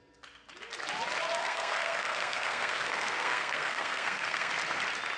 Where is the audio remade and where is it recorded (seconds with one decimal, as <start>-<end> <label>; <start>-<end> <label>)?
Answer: 0.0-1.4 recorded; 1.4-4.5 remade; 4.5-5.2 recorded

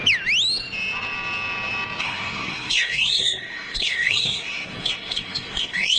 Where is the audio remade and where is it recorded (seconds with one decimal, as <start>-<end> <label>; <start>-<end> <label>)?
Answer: 0.0-2.0 recorded; 2.0-6.0 remade

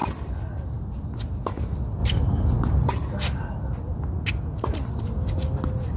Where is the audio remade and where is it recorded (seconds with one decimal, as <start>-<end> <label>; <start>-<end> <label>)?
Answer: 0.0-6.0 recorded

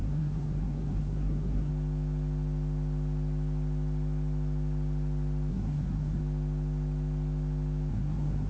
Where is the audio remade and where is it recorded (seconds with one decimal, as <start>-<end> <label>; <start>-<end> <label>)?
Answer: 0.0-1.7 remade; 1.7-5.5 recorded; 5.5-6.2 remade; 6.2-7.9 recorded; 7.9-8.5 remade

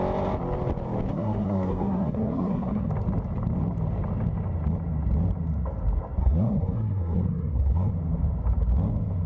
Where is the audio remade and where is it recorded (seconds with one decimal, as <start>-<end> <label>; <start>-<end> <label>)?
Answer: 0.0-1.1 recorded; 1.1-2.9 remade; 2.9-6.2 recorded; 6.2-7.9 remade; 7.9-9.3 recorded

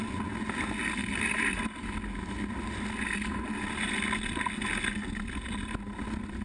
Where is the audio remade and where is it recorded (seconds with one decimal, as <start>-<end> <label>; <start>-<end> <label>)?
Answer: 0.0-6.4 recorded

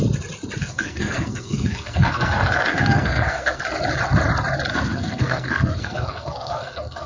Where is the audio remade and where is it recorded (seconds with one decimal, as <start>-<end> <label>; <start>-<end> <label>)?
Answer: 0.0-0.6 recorded; 0.6-3.6 remade; 3.6-4.7 recorded; 4.7-7.1 remade

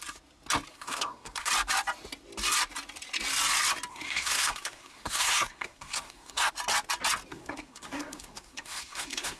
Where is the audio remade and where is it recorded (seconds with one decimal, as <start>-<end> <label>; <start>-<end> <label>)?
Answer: 0.0-0.7 recorded; 0.7-1.5 remade; 1.5-3.9 recorded; 3.9-6.5 remade; 6.5-7.3 recorded; 7.3-9.4 remade